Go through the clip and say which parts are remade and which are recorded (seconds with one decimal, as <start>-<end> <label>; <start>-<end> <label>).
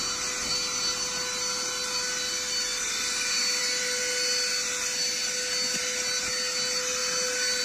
0.0-7.6 recorded